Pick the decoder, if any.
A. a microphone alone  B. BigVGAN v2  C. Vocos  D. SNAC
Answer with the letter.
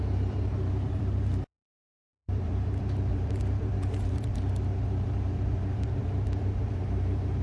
B